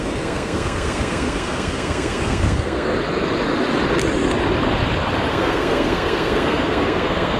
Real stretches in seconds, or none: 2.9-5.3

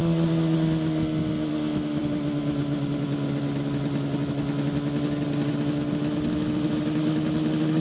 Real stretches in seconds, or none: 0.0-7.8